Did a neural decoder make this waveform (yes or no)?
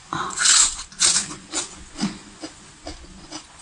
yes